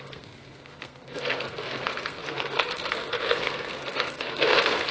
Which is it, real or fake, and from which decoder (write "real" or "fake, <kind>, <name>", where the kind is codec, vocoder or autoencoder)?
fake, codec, SNAC